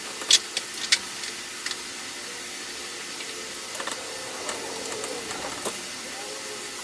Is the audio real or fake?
real